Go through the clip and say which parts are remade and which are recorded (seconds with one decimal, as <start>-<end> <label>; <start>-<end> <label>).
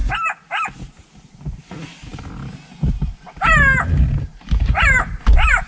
0.0-5.7 recorded